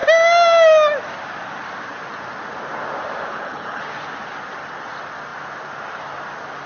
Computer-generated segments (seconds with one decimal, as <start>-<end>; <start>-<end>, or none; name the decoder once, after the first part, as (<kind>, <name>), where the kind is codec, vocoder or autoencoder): 3.3-3.8 (codec, HILCodec)